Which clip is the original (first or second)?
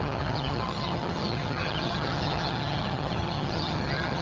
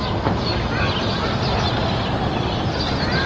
second